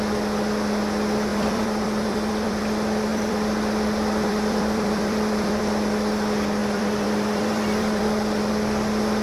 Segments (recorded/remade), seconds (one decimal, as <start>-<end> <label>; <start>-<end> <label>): 0.0-1.3 recorded; 1.3-2.6 remade; 2.6-3.1 recorded; 3.1-5.6 remade; 5.6-6.6 recorded; 6.6-8.5 remade; 8.5-9.2 recorded